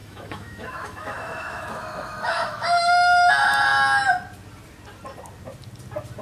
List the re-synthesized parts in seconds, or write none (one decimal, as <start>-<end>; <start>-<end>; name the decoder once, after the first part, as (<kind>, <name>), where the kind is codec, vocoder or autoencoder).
0.0-3.3 (autoencoder, DAC-VAE)